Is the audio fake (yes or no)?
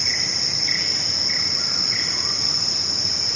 no